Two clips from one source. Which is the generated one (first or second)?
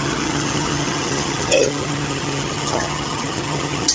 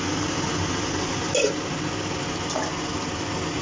first